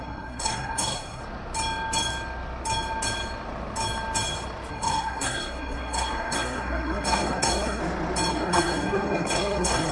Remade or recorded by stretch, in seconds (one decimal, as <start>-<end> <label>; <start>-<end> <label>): 0.0-1.2 remade; 1.2-4.7 recorded; 4.7-7.8 remade; 7.8-8.3 recorded; 8.3-9.9 remade